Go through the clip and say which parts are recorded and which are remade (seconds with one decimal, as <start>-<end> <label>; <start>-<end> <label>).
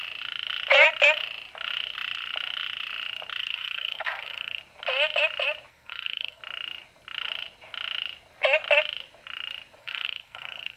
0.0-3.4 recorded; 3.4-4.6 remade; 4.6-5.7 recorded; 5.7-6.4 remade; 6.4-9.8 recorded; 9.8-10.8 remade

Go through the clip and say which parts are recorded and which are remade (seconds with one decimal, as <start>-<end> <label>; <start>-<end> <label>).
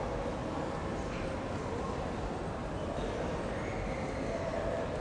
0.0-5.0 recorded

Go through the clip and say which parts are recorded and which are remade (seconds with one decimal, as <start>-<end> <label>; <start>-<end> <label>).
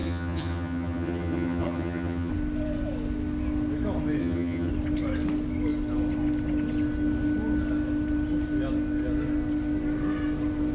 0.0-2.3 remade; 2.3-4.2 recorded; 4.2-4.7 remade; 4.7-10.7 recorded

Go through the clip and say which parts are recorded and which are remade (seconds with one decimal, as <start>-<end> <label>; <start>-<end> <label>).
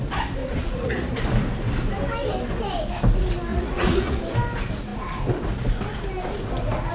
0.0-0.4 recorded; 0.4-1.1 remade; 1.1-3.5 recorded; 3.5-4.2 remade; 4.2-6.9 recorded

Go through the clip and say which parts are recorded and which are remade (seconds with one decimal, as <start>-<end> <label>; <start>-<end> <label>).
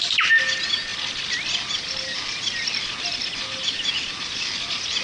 0.0-5.0 recorded